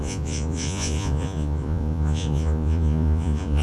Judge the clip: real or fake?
fake